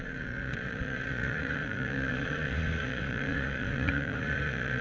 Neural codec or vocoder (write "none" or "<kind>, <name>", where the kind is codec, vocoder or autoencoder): vocoder, Vocos